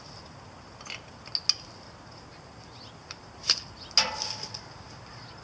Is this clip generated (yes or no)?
no